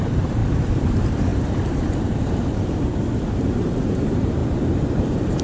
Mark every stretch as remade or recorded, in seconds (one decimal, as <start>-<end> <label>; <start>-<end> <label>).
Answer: 0.0-0.4 remade; 0.4-0.9 recorded; 0.9-2.9 remade; 2.9-3.4 recorded; 3.4-4.4 remade; 4.4-4.9 recorded; 4.9-5.4 remade